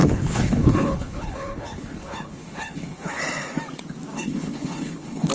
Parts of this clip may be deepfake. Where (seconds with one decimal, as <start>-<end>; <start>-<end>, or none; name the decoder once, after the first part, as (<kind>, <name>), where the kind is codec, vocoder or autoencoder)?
0.0-3.2 (codec, HILCodec); 4.1-5.3